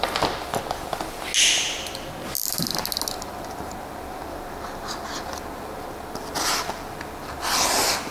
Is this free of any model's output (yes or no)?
yes